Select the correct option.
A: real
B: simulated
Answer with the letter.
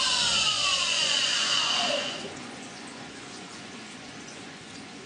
B